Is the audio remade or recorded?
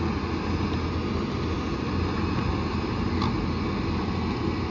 recorded